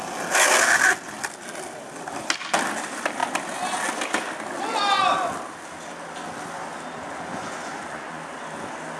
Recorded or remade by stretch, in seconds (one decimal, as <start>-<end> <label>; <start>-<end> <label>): 0.0-7.3 recorded; 7.3-8.2 remade; 8.2-9.0 recorded